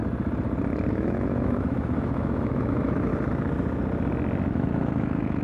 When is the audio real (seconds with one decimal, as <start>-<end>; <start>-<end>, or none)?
0.0-0.9; 3.1-4.5